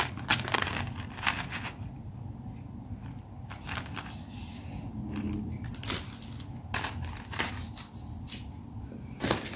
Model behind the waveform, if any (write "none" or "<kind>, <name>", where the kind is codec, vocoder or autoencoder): none